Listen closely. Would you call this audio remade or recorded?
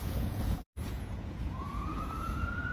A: remade